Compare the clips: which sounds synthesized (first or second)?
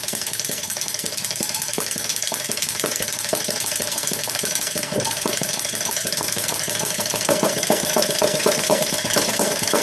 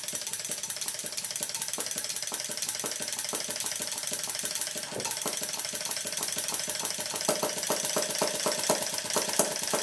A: first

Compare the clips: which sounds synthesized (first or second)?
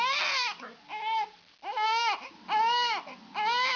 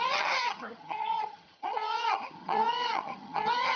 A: second